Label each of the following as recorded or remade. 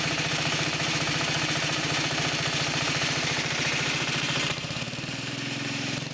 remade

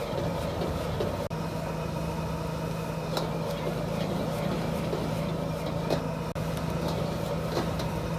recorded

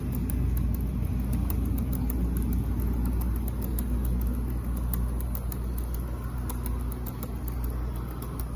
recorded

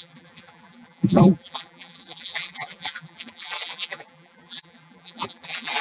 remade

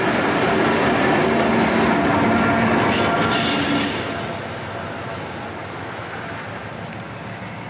recorded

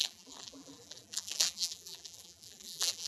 remade